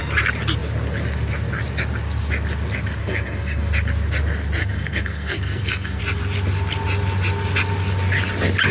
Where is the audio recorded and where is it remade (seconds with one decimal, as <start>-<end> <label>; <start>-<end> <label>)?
0.0-3.0 recorded; 3.0-3.7 remade; 3.7-4.6 recorded; 4.6-6.0 remade; 6.0-8.7 recorded